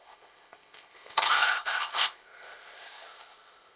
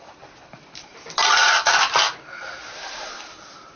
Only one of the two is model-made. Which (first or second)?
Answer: first